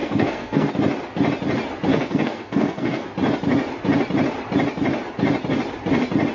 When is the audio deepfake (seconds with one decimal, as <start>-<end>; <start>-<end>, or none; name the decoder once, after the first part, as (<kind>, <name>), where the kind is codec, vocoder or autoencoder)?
0.0-0.7 (codec, SNAC); 1.9-3.1